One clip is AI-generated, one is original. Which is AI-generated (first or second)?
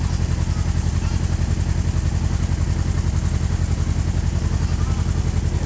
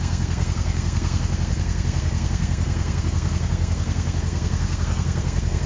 second